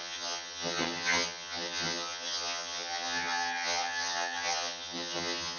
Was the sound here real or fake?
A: fake